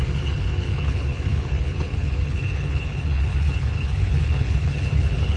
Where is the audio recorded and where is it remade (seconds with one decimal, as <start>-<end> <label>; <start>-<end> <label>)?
0.0-5.4 remade